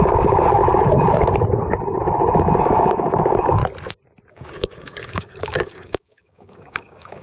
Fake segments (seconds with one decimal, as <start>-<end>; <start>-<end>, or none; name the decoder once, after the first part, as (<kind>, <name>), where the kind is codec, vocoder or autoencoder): 0.0-0.6 (codec, DAC); 2.6-3.6; 4.3-7.2